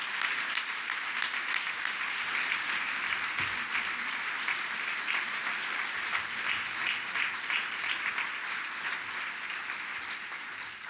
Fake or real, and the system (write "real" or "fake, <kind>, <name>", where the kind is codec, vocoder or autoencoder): real